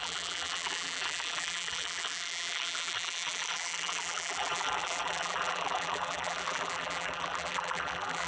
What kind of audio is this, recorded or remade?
remade